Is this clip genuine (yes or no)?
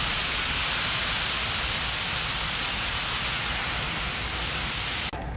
yes